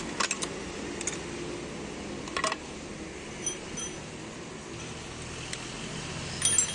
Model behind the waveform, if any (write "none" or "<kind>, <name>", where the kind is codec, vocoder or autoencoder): none